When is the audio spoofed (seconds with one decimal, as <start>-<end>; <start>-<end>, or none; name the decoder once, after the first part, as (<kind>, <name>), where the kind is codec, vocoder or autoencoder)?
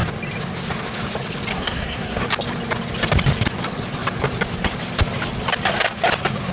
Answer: 1.5-2.2 (codec, SNAC)